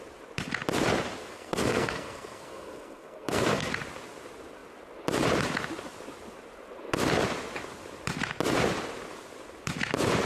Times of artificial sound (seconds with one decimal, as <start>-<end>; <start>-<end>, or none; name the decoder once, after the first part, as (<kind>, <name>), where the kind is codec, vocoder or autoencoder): 1.2-3.7 (codec, SNAC)